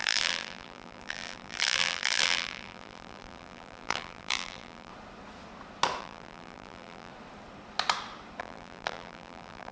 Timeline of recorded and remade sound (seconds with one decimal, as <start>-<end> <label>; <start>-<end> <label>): 0.0-4.9 remade; 4.9-6.0 recorded; 6.0-7.1 remade; 7.1-8.4 recorded; 8.4-9.7 remade